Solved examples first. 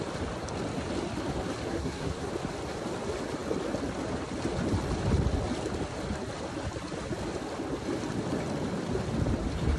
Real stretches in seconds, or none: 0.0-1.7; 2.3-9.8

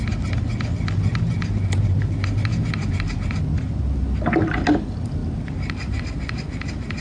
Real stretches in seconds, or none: 0.0-1.1; 2.0-2.8; 3.4-5.2; 6.0-7.0

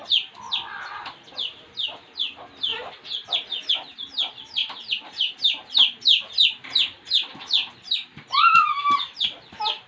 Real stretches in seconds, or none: 0.0-9.9

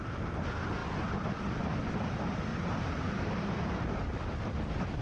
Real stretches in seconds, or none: 0.0-2.5